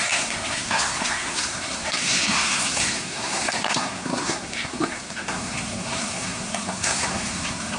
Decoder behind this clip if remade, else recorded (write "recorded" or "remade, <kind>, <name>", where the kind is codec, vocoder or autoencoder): remade, codec, SNAC